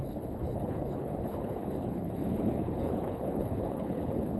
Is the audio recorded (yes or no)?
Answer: no